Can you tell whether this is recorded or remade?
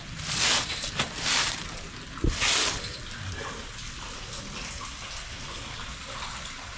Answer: recorded